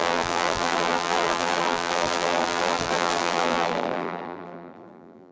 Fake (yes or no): yes